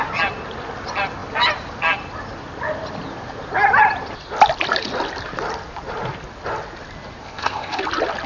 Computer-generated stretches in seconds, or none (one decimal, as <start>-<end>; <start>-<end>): 7.2-7.8